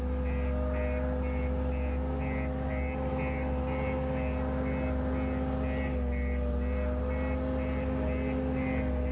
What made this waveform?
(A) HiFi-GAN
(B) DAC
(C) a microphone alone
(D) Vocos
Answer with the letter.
C